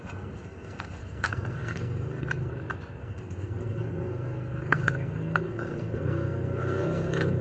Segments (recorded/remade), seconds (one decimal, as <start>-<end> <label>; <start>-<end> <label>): 0.0-2.5 remade; 2.5-3.0 recorded; 3.0-7.4 remade